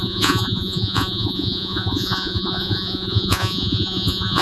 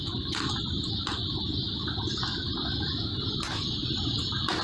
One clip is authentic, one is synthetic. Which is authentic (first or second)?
second